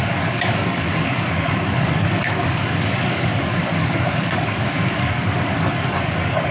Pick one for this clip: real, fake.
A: fake